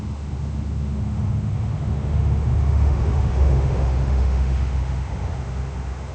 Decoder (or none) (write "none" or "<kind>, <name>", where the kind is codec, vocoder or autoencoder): autoencoder, DAC-VAE